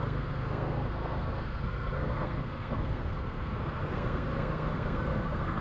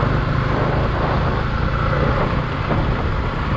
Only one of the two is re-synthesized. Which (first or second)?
first